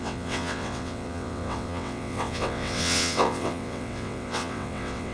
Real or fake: fake